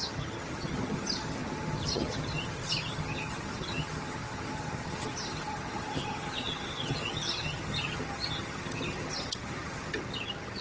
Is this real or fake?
fake